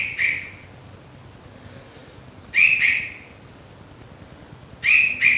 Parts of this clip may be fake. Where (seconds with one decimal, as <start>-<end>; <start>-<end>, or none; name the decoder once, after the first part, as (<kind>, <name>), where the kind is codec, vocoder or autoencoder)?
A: none